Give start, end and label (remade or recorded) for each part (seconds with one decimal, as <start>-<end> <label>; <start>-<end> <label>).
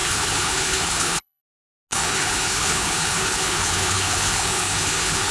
0.0-1.4 remade; 1.4-1.9 recorded; 1.9-5.3 remade